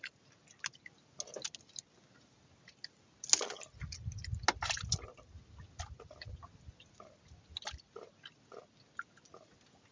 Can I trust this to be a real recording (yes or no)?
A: yes